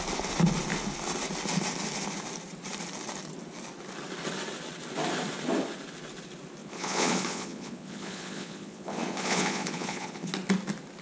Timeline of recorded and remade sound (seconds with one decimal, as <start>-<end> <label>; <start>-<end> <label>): 0.0-6.6 recorded; 6.6-10.3 remade; 10.3-11.0 recorded